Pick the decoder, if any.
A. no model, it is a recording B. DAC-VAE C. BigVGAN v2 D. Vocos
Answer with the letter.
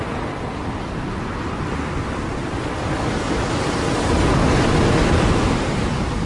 A